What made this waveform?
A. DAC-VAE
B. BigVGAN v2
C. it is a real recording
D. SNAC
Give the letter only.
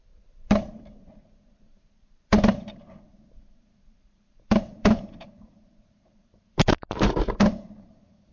B